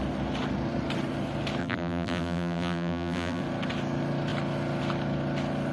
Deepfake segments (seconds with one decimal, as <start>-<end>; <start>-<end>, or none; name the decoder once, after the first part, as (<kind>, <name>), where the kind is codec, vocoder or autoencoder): 1.6-3.4 (vocoder, BigVGAN v2)